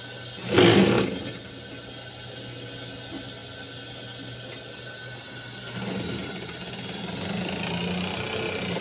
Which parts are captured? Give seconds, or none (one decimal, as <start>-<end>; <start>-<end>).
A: 0.0-8.8

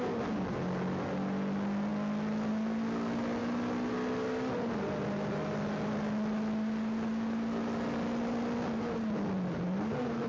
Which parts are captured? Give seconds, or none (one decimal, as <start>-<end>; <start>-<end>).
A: 0.0-10.3

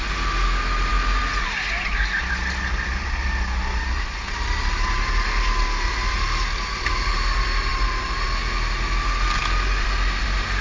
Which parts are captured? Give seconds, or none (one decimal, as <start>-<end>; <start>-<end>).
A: 0.0-10.6

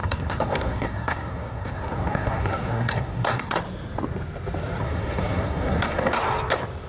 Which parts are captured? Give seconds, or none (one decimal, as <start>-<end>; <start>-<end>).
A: 3.6-4.8; 6.2-6.9

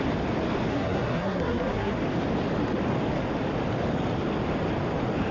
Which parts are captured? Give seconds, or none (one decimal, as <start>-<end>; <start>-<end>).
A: 0.0-0.7; 1.9-5.3

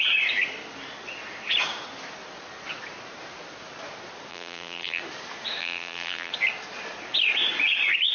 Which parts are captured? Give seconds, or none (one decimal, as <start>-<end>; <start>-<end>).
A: 0.0-4.3; 5.0-5.6; 6.3-8.1

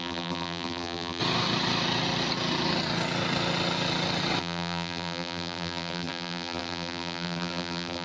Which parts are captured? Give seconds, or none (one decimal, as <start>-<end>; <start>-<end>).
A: 1.2-4.4